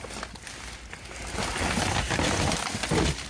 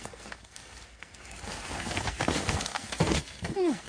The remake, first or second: second